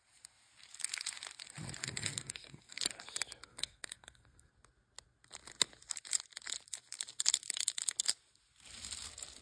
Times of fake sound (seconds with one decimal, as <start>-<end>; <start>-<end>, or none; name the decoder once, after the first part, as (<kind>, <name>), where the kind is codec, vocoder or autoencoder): 1.8-2.8 (codec, SNAC); 3.5-4.5